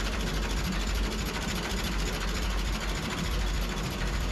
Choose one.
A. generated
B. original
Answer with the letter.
B